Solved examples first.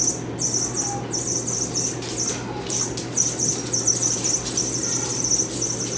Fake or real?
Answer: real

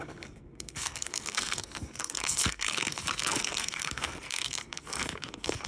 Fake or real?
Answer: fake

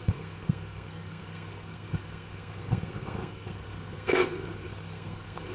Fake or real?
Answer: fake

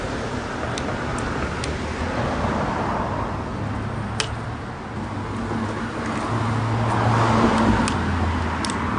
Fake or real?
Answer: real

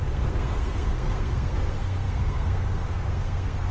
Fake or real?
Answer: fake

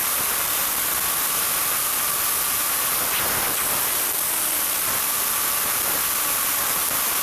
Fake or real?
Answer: real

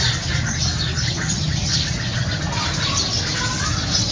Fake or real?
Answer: real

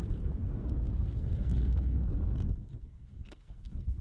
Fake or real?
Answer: fake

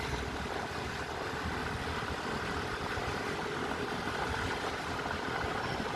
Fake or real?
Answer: real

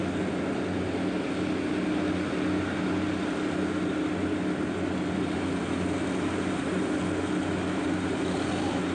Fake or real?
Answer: real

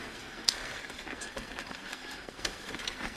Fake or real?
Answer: fake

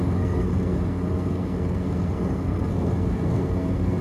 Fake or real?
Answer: fake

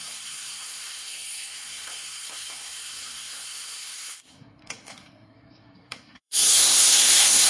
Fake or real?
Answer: fake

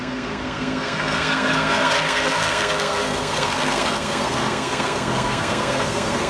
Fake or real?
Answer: fake